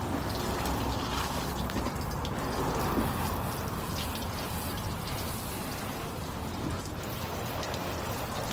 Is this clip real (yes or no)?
yes